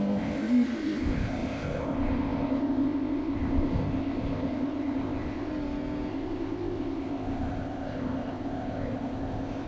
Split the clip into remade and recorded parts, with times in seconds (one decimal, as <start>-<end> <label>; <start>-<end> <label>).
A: 0.0-5.5 remade; 5.5-6.1 recorded; 6.1-9.7 remade